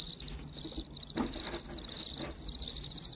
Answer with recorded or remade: recorded